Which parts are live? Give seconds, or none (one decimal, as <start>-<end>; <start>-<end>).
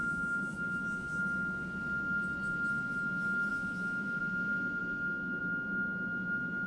1.2-3.5; 4.2-6.7